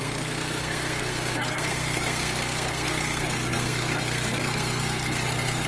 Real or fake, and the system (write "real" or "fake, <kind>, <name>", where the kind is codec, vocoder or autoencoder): fake, codec, SNAC